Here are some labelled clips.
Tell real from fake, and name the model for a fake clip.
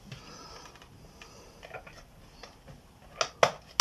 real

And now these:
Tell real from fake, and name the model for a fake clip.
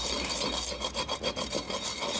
real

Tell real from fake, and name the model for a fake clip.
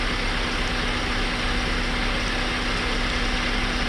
real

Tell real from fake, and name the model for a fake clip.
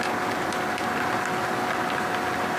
real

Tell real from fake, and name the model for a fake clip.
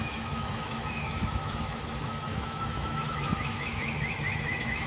fake, autoencoder, DAC-VAE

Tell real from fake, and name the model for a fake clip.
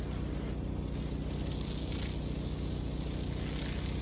real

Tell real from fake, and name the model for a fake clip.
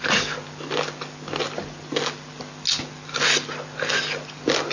real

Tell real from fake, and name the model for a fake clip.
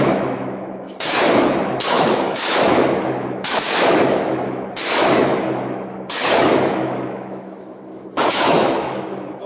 fake, autoencoder, DAC-VAE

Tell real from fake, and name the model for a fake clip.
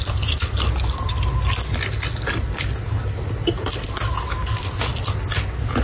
real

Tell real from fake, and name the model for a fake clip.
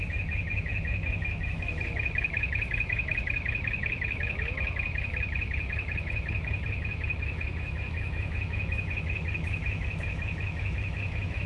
fake, autoencoder, DAC-VAE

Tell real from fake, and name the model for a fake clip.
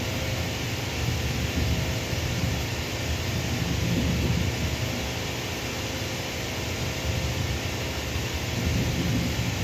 real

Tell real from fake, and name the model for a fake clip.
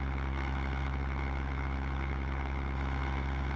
fake, autoencoder, DAC-VAE